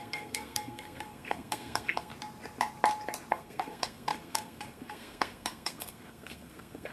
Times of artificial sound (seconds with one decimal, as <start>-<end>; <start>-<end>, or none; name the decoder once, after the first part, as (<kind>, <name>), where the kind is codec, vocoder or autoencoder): 0.0-2.1 (codec, SNAC); 3.3-6.9